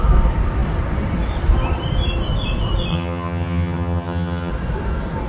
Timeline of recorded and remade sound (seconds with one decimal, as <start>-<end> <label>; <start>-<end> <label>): 0.0-2.9 recorded; 2.9-4.5 remade; 4.5-5.3 recorded